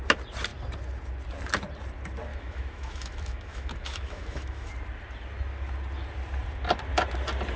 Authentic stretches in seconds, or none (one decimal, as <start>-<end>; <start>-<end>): 0.0-2.3; 4.7-7.6